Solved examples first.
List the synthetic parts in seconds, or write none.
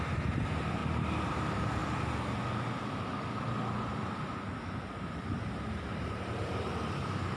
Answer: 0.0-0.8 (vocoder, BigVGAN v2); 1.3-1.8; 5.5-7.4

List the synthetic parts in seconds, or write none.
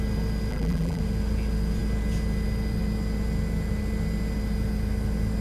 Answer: 0.5-1.0 (vocoder, BigVGAN v2)